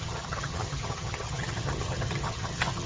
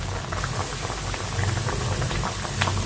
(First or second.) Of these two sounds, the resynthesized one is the first